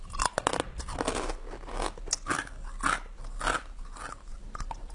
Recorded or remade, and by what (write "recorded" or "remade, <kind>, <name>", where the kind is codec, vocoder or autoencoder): recorded